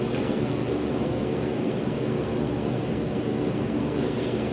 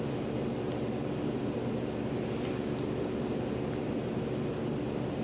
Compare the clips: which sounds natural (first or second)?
second